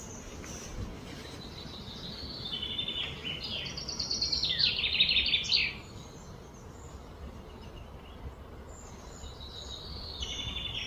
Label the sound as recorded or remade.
recorded